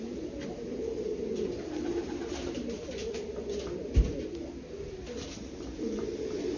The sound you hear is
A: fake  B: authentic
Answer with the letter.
B